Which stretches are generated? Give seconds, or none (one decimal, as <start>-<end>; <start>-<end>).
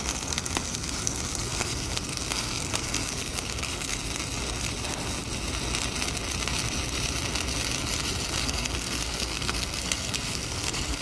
0.0-3.9; 8.4-11.0